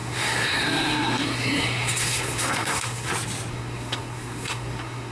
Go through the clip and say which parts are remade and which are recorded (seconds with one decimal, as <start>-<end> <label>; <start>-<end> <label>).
0.0-3.1 remade; 3.1-3.5 recorded; 3.5-5.1 remade